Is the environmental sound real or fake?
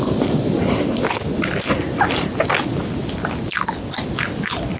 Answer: real